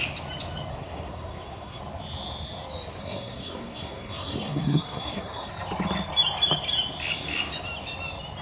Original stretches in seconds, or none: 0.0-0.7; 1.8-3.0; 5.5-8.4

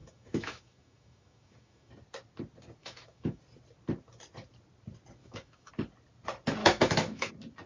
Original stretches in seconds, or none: 1.9-2.8; 3.4-5.2; 5.7-6.6; 7.3-7.7

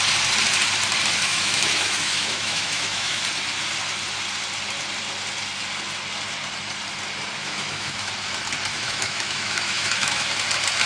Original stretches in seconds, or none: 0.0-1.3; 3.2-7.4; 8.1-8.7; 10.3-10.9

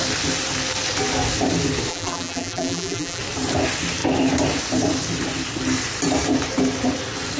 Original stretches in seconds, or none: 0.0-1.9; 3.2-7.4

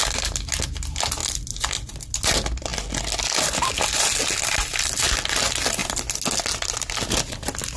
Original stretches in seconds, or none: 0.0-7.8

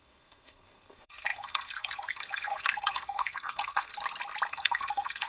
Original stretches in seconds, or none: 3.9-4.5

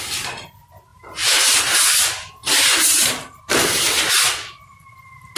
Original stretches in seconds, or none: 0.0-0.9; 1.9-2.4; 4.0-5.4